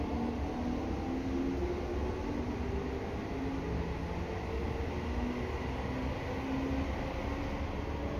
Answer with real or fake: real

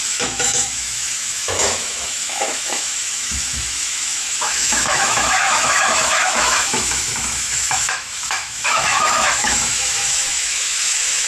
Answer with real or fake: fake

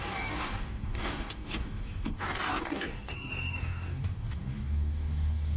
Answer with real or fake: fake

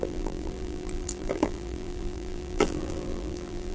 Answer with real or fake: fake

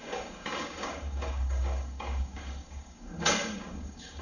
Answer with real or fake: fake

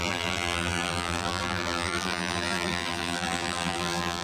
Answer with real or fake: fake